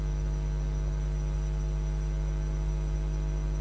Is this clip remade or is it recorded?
recorded